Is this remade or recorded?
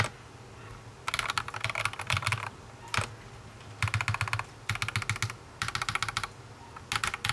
recorded